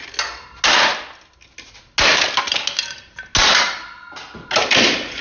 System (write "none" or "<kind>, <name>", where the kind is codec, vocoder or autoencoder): none